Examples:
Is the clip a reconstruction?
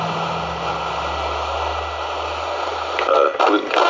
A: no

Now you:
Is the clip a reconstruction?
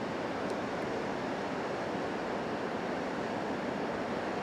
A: no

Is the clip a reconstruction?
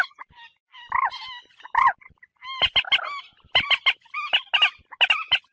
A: no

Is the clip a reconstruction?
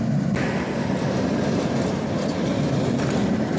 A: no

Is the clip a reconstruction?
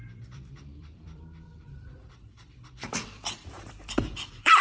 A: yes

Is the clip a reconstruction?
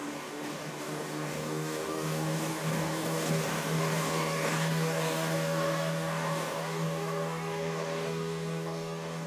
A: yes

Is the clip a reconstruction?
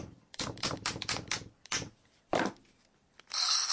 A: yes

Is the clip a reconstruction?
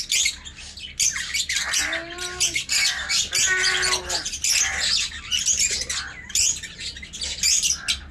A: no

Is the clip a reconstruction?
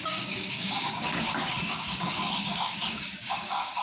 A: yes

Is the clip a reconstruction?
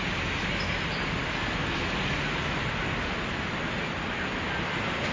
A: no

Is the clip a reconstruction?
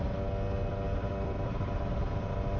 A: no